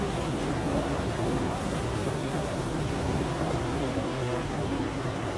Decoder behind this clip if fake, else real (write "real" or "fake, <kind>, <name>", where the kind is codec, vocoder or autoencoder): fake, codec, SNAC